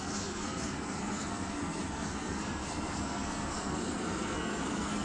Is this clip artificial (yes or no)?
yes